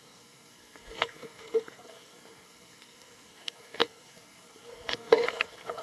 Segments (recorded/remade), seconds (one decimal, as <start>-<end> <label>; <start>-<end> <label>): 0.0-5.8 remade